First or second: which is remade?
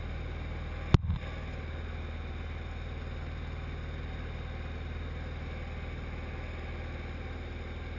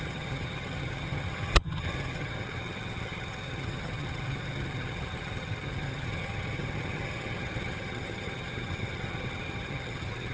second